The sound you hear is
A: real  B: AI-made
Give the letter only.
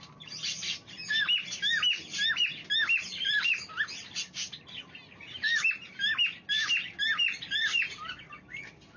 A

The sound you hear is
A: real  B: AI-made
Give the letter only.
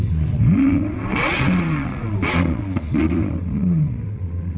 B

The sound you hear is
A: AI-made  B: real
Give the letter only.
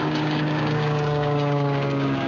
A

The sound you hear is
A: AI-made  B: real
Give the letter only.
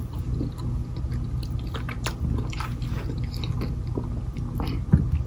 B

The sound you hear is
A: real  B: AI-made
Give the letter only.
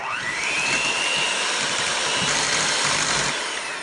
B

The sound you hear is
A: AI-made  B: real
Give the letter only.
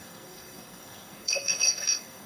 A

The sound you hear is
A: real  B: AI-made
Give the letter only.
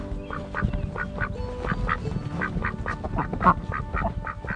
A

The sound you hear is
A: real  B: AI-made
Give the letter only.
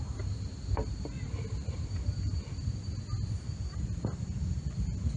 A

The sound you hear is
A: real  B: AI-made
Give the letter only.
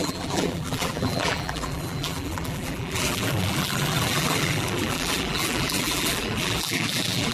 B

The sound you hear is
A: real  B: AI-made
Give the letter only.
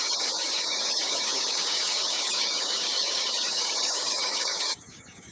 B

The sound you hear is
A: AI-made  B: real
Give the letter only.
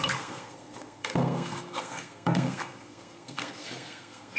A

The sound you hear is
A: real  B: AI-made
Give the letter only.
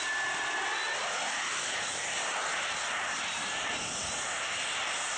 A